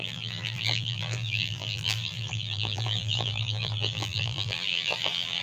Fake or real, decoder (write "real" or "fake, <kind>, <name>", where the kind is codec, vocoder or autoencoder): fake, vocoder, BigVGAN v2